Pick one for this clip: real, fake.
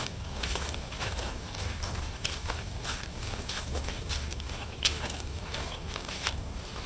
fake